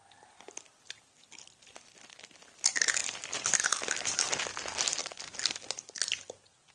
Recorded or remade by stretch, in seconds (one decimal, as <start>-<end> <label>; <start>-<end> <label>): 0.0-6.7 recorded